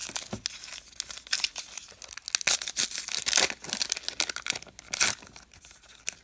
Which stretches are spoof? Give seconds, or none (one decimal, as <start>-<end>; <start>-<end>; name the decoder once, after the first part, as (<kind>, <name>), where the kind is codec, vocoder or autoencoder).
none